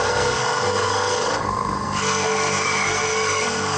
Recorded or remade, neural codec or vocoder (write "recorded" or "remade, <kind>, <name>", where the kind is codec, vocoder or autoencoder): remade, codec, SNAC